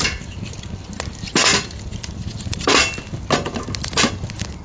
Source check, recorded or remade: recorded